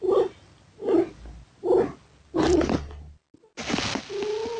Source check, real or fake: real